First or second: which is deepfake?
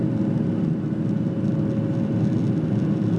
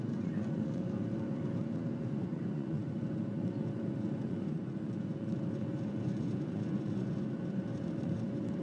second